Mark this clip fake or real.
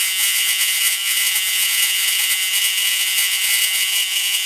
fake